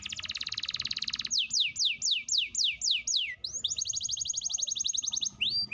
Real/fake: real